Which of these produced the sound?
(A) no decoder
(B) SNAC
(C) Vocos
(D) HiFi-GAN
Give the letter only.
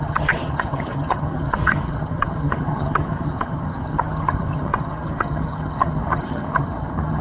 D